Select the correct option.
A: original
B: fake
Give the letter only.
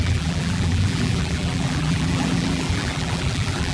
B